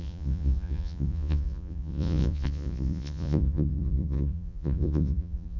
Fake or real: fake